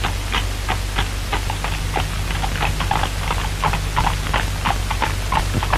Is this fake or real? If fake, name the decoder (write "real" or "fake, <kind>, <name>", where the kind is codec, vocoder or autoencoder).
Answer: real